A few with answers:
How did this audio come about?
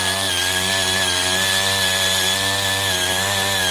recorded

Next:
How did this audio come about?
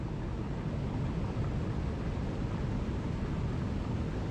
recorded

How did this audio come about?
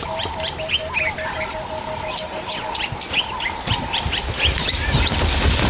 recorded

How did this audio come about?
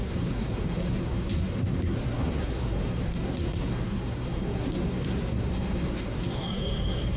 remade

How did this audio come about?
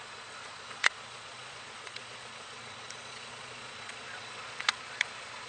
remade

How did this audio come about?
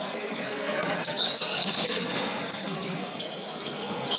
remade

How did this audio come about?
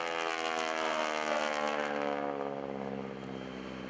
recorded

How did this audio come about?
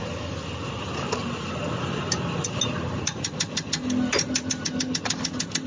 recorded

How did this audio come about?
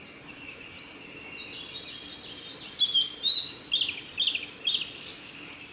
recorded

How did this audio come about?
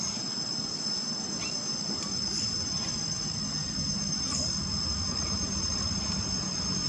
recorded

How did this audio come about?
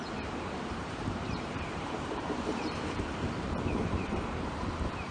remade